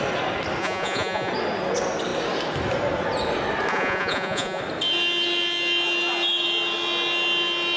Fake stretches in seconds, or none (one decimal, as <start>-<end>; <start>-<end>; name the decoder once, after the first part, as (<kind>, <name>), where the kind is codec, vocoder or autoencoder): 0.6-1.3 (vocoder, Vocos); 3.7-4.6